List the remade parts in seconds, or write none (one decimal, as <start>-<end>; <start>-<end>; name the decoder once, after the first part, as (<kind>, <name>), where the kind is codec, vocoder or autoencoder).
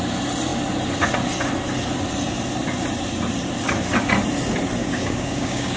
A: 4.8-5.8 (codec, DAC)